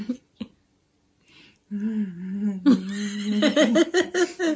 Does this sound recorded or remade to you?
recorded